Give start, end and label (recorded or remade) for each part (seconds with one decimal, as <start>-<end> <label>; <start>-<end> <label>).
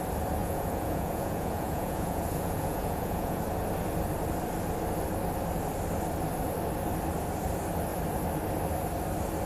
0.0-0.4 recorded; 0.4-3.4 remade; 3.4-9.5 recorded